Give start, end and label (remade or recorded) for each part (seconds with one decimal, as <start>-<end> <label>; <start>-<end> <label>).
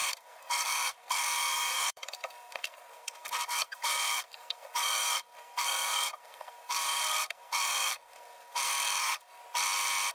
0.0-9.4 remade; 9.4-10.1 recorded